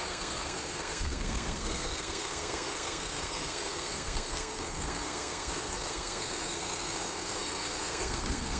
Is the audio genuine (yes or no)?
no